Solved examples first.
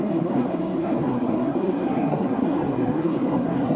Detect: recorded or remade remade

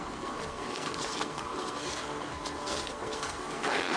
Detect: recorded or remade remade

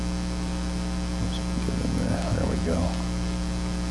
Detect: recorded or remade recorded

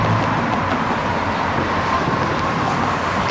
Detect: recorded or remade recorded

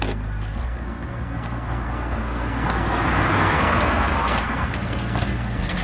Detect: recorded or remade remade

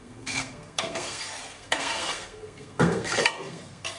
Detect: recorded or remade remade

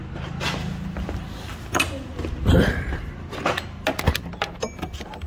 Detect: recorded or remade recorded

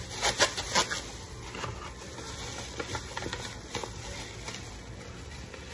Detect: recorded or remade recorded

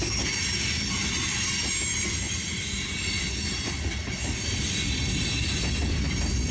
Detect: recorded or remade recorded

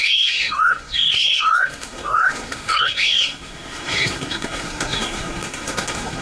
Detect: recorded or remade remade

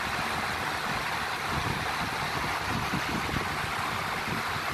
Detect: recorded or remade recorded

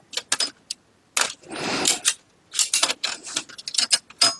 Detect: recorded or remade recorded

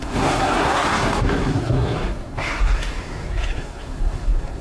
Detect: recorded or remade remade